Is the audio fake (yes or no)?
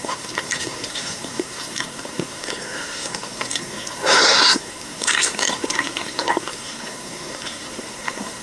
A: yes